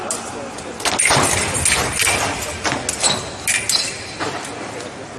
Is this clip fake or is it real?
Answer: real